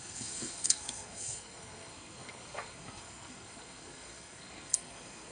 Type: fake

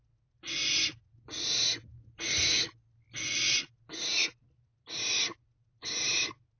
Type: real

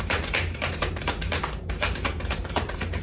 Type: fake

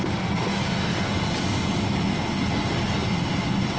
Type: real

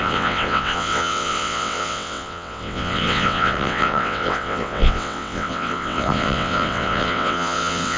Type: fake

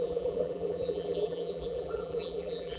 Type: fake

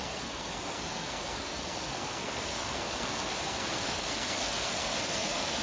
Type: fake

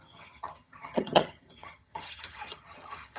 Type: fake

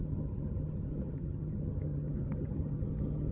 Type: fake